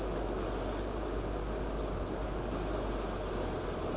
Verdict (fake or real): real